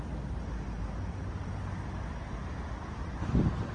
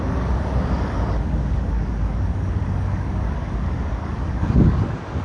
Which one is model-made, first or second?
second